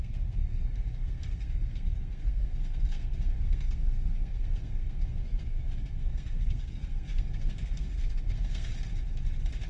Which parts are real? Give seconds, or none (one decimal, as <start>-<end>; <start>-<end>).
8.7-9.7